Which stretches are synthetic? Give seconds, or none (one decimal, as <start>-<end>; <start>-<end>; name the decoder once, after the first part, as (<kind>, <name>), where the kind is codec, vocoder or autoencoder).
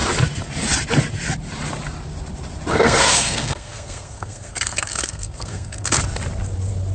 2.7-6.0 (codec, SNAC)